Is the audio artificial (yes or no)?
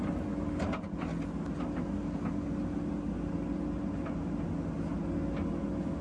no